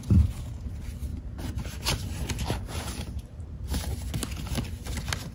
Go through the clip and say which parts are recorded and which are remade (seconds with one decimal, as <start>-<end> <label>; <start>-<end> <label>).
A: 0.0-1.1 recorded; 1.1-4.1 remade; 4.1-5.3 recorded